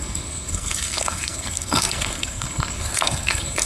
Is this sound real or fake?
fake